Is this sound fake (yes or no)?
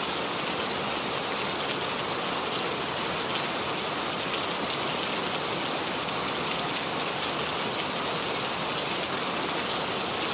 no